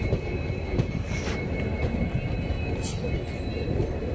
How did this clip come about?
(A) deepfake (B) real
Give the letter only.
B